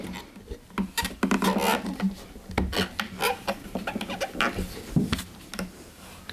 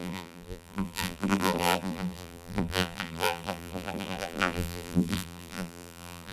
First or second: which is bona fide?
first